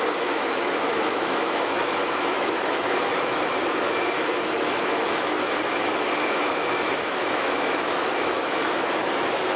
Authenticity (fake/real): fake